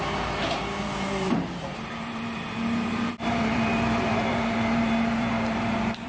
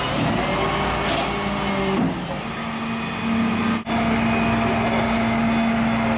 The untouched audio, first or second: second